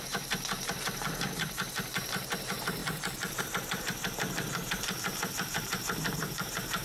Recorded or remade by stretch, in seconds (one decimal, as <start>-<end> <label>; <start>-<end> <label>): 0.0-6.8 remade